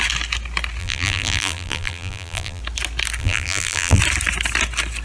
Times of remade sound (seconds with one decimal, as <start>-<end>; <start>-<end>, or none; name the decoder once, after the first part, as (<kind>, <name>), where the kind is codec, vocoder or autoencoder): 0.8-2.6 (vocoder, BigVGAN v2); 3.2-4.0